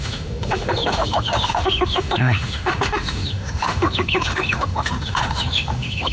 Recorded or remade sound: remade